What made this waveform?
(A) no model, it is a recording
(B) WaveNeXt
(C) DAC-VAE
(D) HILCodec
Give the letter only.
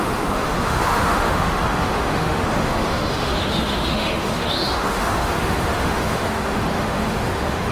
C